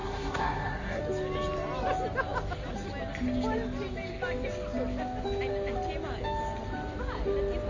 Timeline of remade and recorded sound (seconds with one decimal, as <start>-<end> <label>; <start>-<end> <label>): 0.0-1.0 remade; 1.0-7.7 recorded